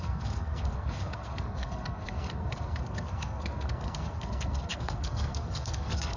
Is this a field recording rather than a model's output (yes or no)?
no